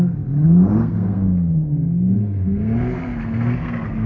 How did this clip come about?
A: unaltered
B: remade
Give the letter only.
B